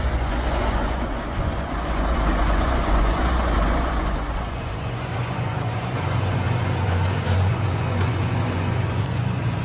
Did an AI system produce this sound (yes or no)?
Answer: yes